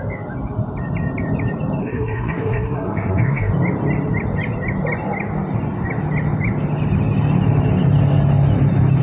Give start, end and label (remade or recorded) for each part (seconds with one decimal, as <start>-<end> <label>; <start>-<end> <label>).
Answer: 0.0-1.8 recorded; 1.8-3.5 remade; 3.5-9.0 recorded